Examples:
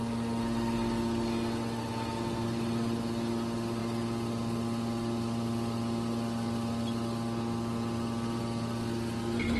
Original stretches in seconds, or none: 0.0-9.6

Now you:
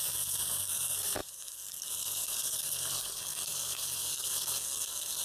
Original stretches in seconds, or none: none

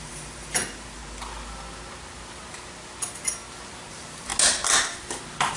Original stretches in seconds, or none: 1.0-3.9; 4.3-5.6